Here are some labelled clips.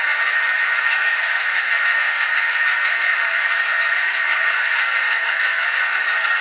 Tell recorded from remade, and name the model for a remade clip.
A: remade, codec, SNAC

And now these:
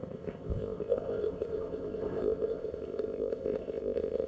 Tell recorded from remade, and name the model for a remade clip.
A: remade, codec, ZipCodec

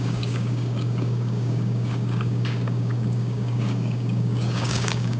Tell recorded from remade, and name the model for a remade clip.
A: remade, codec, DAC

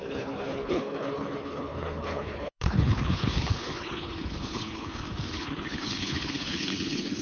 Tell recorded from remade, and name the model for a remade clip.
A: remade, codec, HILCodec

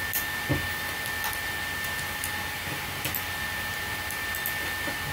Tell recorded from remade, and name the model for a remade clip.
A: recorded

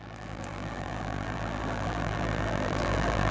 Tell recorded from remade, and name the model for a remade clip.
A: remade, vocoder, BigVGAN v2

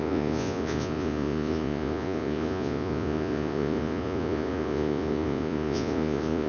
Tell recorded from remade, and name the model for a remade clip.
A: remade, vocoder, Vocos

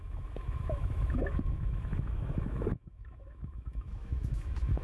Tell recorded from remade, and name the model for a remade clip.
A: remade, autoencoder, DAC-VAE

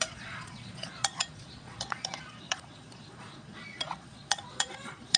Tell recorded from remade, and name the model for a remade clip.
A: remade, vocoder, Vocos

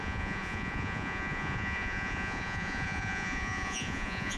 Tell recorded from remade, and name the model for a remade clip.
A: remade, vocoder, Vocos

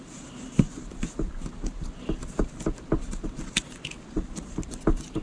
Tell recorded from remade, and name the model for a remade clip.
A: recorded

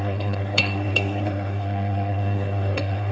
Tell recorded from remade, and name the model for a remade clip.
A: remade, codec, SNAC